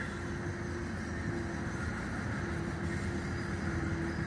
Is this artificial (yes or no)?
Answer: no